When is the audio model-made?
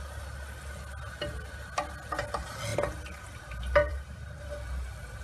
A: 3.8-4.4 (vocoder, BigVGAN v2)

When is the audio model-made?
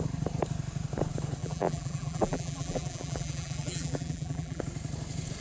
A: 1.4-4.6 (vocoder, BigVGAN v2)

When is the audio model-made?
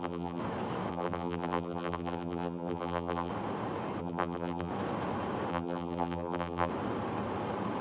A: 0.0-0.4 (vocoder, BigVGAN v2); 0.9-3.3; 4.0-4.7; 5.5-6.7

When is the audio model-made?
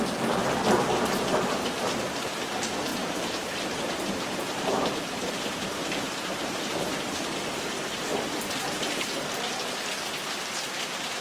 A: 2.9-6.7 (vocoder, BigVGAN v2)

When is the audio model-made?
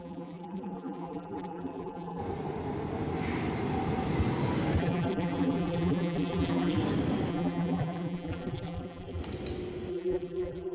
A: 0.0-2.2 (vocoder, BigVGAN v2); 4.8-6.8; 7.3-9.2; 9.9-10.7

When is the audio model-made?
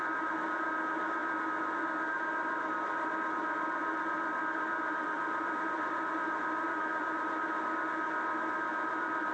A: 3.8-7.2 (vocoder, BigVGAN v2)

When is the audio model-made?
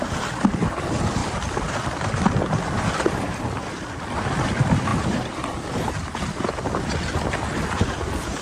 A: 1.2-2.5 (vocoder, BigVGAN v2); 4.9-6.5